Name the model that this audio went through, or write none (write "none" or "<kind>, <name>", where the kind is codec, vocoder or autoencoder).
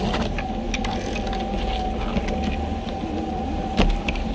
none